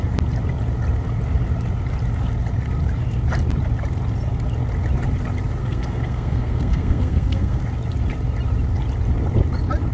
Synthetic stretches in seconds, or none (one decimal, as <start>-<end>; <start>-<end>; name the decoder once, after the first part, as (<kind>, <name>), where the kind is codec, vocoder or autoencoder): 5.6-7.6 (codec, SNAC)